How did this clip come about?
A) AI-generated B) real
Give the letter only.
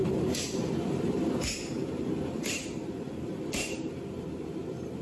A